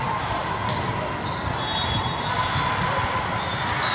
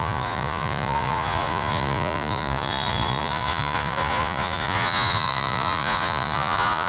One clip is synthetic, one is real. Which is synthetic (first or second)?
second